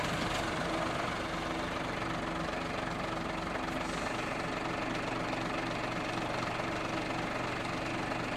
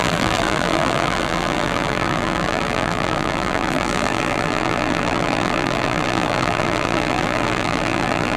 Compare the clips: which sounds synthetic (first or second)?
second